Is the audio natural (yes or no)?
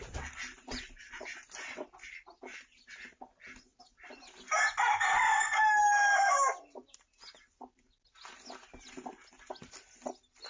yes